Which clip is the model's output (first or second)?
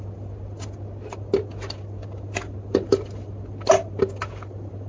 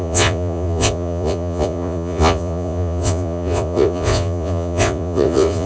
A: second